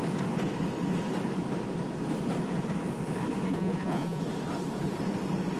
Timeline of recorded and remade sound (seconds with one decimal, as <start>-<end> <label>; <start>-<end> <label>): 0.0-3.5 recorded; 3.5-4.2 remade; 4.2-5.6 recorded